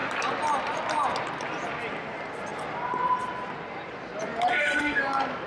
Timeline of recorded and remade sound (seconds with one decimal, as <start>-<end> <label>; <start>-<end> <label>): 0.0-4.5 recorded; 4.5-5.0 remade; 5.0-5.5 recorded